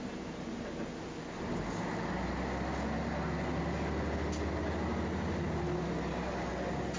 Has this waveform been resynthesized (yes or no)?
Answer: no